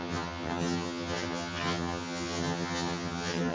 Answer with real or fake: fake